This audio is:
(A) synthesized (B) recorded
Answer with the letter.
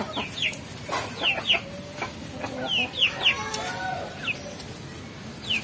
B